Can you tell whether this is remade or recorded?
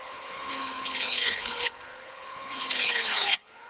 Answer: remade